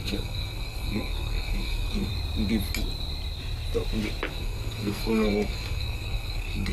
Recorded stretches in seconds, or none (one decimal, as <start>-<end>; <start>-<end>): 2.1-4.3